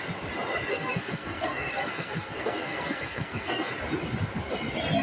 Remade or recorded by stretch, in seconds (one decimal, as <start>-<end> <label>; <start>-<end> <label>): 0.0-0.7 recorded; 0.7-3.7 remade; 3.7-5.0 recorded